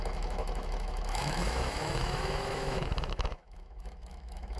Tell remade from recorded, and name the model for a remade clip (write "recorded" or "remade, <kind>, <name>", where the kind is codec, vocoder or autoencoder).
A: remade, autoencoder, DAC-VAE